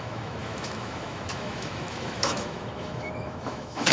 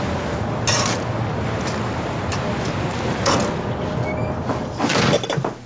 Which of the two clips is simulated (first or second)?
first